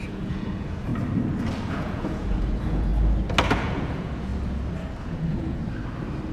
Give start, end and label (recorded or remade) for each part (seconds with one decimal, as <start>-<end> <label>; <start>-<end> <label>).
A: 0.0-0.9 remade; 0.9-1.7 recorded; 1.7-2.9 remade; 2.9-3.6 recorded; 3.6-4.3 remade; 4.3-5.0 recorded; 5.0-5.6 remade; 5.6-6.3 recorded